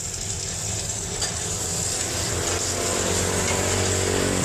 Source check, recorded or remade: recorded